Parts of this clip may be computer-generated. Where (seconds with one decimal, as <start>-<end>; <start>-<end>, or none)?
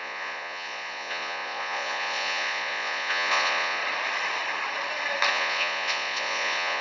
0.0-3.8; 5.3-6.8